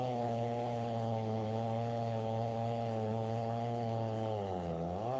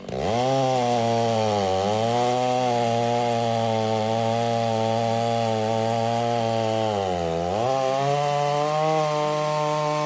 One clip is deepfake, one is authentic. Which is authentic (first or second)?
second